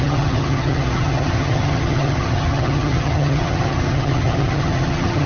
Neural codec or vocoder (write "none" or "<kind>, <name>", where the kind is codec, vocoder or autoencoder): vocoder, HiFi-GAN